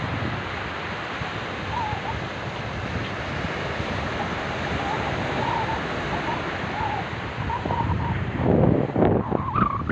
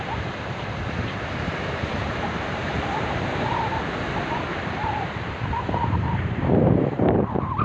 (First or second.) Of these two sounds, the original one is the first